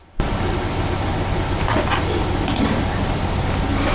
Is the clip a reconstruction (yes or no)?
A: no